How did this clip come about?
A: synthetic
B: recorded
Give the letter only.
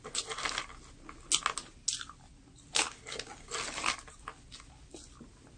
B